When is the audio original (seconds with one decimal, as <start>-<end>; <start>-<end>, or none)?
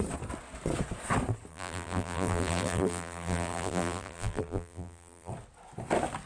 0.0-1.5; 5.3-6.3